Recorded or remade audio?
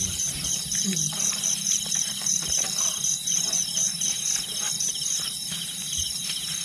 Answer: remade